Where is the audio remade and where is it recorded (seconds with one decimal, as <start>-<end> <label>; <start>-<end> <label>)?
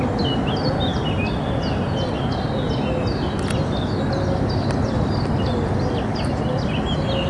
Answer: 0.0-7.3 recorded